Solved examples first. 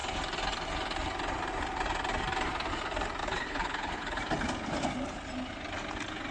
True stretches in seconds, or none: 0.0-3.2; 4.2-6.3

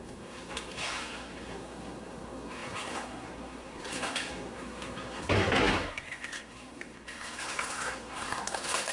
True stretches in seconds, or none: none

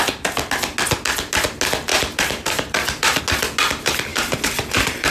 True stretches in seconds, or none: 0.0-1.9; 3.2-4.1

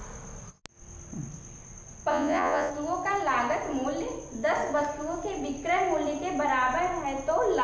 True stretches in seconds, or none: 0.0-2.1; 2.7-7.6

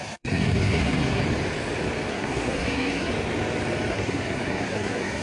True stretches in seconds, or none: 1.2-2.1; 3.1-3.9

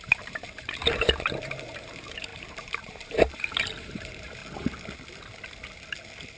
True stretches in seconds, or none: 4.4-6.4

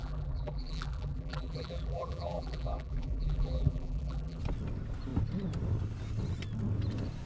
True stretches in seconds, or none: 4.4-7.3

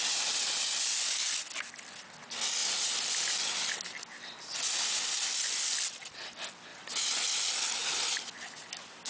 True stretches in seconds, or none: 0.0-2.6; 3.3-6.7; 7.4-9.1